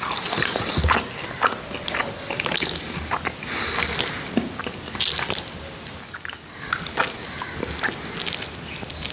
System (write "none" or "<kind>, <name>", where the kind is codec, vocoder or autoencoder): none